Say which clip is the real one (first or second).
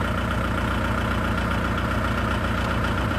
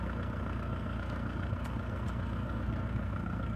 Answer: first